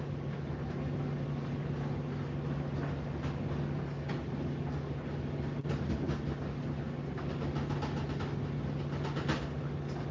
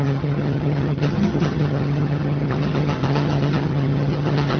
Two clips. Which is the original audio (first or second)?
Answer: first